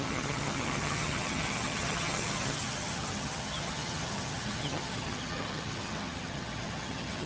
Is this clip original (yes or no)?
no